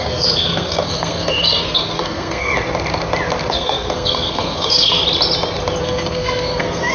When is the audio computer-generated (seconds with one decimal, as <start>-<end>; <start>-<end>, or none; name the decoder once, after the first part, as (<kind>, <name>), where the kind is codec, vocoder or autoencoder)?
0.0-2.5 (codec, SNAC); 3.5-5.0; 5.8-6.9